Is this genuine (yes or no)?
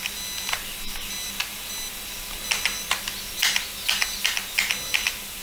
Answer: yes